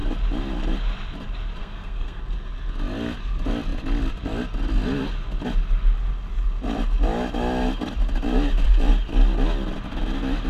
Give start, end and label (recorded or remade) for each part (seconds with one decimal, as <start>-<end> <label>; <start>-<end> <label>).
0.0-1.6 recorded; 1.6-2.2 remade; 2.2-10.5 recorded